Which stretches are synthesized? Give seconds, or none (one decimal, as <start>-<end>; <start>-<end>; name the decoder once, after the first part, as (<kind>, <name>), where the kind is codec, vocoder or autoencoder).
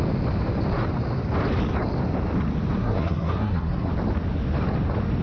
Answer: 2.8-3.9 (codec, SNAC)